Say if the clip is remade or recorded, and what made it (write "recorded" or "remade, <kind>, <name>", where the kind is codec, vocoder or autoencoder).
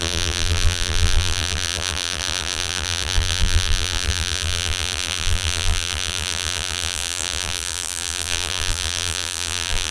remade, vocoder, BigVGAN v2